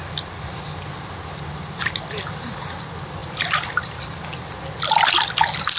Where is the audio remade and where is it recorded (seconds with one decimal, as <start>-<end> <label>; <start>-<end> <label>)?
0.0-5.8 recorded